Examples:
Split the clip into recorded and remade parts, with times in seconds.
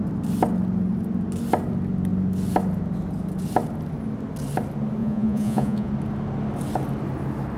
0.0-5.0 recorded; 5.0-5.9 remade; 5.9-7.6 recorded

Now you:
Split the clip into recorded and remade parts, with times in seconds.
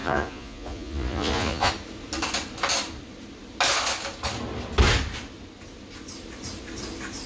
0.0-1.7 remade; 1.7-7.3 recorded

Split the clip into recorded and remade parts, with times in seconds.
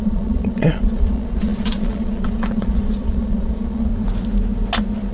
0.0-3.9 remade; 3.9-5.1 recorded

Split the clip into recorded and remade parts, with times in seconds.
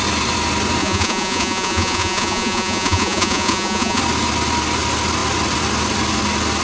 0.0-0.8 recorded; 0.8-4.0 remade; 4.0-6.6 recorded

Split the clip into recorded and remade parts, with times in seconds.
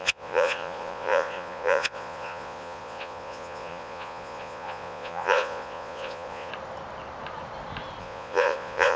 0.0-6.5 remade; 6.5-8.0 recorded; 8.0-9.0 remade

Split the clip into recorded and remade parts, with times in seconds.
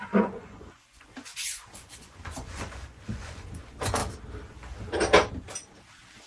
0.0-4.0 remade; 4.0-6.3 recorded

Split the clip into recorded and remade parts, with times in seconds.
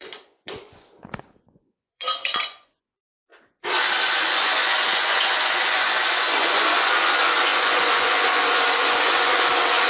0.0-3.3 remade; 3.3-4.2 recorded; 4.2-9.9 remade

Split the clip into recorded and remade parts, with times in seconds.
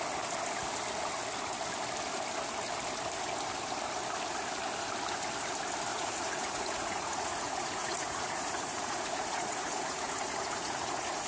0.0-5.9 recorded; 5.9-11.3 remade